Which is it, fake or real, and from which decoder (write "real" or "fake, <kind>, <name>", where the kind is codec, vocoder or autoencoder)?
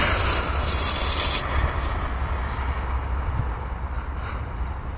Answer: real